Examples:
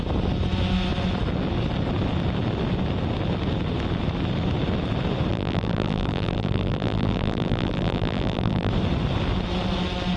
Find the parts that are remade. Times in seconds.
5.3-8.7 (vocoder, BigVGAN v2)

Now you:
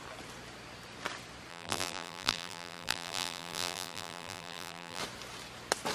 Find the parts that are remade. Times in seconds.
1.5-5.0 (vocoder, BigVGAN v2)

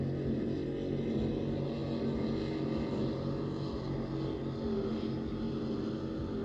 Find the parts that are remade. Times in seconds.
none

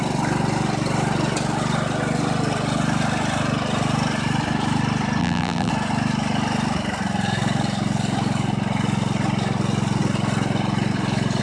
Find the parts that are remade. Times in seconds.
5.2-5.7 (vocoder, BigVGAN v2)

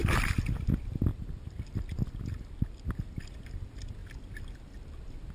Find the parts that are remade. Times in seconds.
none

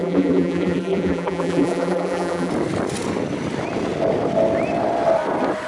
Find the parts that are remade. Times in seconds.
0.0-2.5 (vocoder, BigVGAN v2)